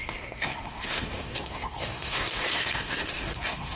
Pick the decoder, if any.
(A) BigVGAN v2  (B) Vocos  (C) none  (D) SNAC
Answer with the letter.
D